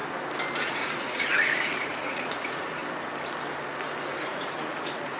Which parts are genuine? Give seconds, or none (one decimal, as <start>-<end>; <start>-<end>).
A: 0.0-0.6; 2.8-4.2